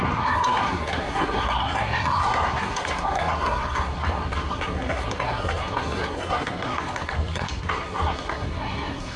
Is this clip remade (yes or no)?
yes